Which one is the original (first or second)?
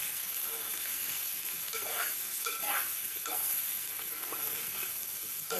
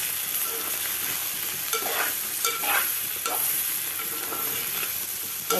second